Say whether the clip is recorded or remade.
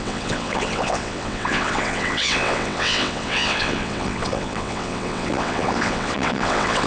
remade